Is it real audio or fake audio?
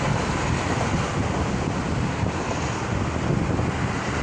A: real